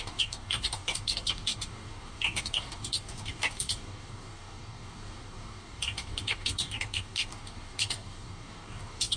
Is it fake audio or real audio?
fake